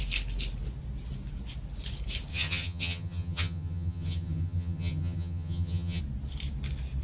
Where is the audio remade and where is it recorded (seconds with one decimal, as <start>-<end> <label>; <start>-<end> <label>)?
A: 0.0-2.3 recorded; 2.3-6.0 remade; 6.0-7.0 recorded